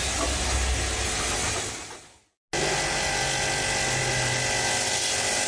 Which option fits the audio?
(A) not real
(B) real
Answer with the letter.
B